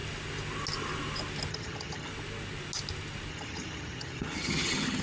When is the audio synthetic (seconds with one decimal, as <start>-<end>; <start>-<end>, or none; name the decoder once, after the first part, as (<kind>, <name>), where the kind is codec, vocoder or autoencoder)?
1.5-2.1 (vocoder, HiFi-GAN); 3.3-5.0